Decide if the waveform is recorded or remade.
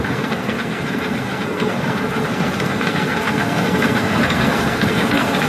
remade